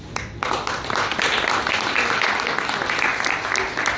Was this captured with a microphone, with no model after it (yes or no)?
yes